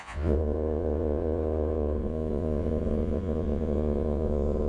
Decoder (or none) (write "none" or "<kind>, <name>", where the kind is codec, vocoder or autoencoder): vocoder, Vocos